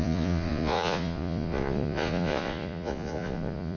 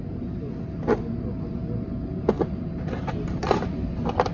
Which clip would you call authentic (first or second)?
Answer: second